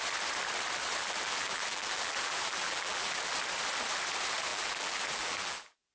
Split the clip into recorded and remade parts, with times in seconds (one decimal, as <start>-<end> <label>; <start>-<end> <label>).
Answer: 0.0-1.0 recorded; 1.0-3.3 remade; 3.3-4.5 recorded; 4.5-5.9 remade